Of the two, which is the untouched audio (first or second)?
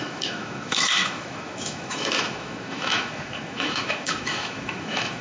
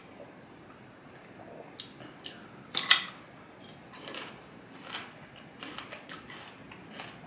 second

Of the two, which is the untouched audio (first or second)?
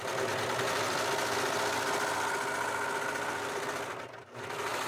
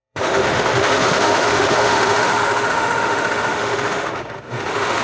first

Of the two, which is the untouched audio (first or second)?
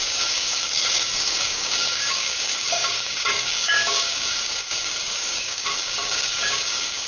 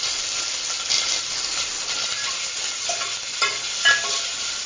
second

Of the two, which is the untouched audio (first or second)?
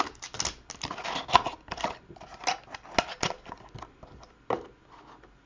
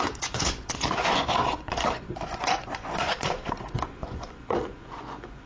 first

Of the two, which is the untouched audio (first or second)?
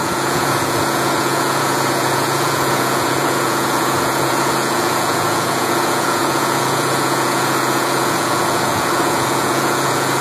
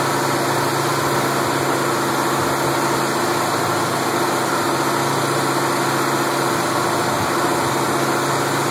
second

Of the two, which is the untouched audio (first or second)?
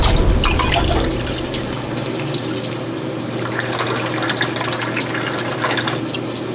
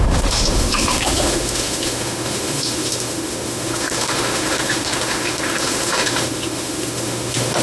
first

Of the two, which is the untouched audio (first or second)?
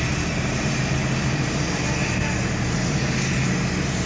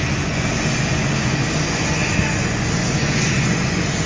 first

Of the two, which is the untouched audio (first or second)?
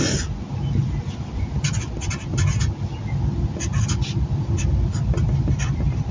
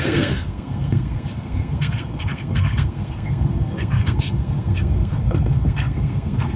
first